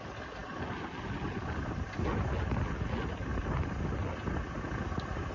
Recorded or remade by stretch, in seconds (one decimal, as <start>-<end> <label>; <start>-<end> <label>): 0.0-5.3 recorded